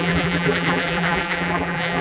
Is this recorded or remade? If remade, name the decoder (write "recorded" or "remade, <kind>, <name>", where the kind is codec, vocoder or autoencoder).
remade, vocoder, BigVGAN v2